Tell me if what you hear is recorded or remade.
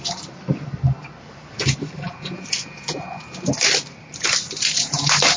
recorded